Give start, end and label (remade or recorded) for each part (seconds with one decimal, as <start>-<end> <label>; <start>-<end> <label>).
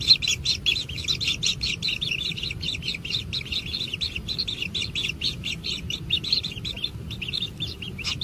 0.0-8.2 recorded